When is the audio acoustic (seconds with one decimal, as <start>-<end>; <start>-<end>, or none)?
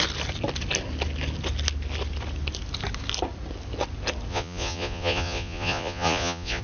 0.0-4.3